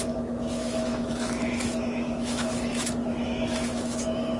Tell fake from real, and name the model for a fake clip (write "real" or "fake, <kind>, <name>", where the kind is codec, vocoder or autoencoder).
fake, autoencoder, DAC-VAE